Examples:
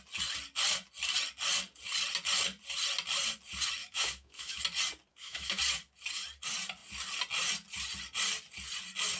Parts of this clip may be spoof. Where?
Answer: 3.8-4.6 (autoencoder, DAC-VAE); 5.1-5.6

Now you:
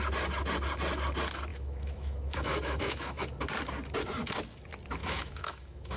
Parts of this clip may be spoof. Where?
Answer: 1.5-3.2 (autoencoder, DAC-VAE); 5.0-6.0